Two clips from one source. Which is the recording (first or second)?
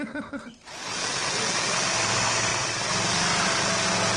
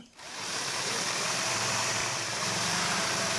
first